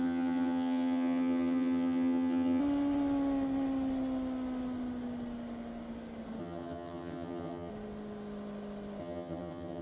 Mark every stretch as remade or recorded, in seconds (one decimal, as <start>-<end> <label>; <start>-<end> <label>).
0.0-2.6 remade; 2.6-6.4 recorded; 6.4-7.7 remade; 7.7-9.0 recorded; 9.0-9.8 remade